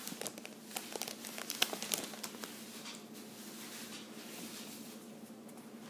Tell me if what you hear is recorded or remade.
recorded